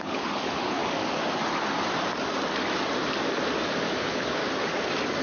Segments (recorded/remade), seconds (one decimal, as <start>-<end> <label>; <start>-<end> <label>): 0.0-0.8 remade; 0.8-3.9 recorded; 3.9-4.4 remade; 4.4-5.2 recorded